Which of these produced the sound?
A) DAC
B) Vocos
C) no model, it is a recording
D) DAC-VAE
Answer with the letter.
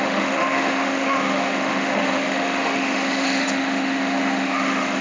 D